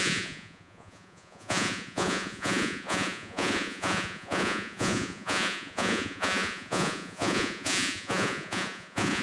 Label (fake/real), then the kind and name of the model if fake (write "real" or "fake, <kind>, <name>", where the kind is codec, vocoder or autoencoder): fake, vocoder, Vocos